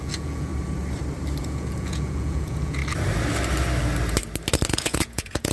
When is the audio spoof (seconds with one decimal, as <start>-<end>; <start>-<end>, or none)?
0.0-0.5; 1.4-2.8; 4.7-5.5